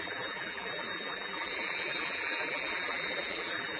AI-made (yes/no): yes